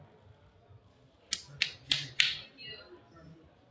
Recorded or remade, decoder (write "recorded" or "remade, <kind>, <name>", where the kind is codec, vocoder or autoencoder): recorded